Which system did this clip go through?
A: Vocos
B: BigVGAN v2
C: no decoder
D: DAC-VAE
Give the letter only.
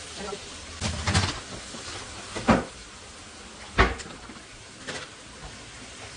C